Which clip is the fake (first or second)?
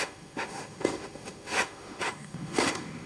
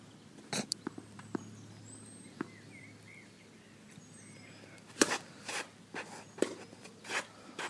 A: first